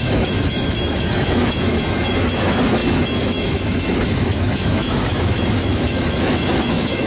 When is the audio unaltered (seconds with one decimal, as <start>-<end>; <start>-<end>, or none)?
none